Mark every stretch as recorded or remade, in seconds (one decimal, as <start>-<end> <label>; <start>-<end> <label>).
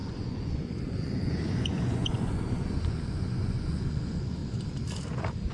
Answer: 0.0-4.4 remade; 4.4-5.5 recorded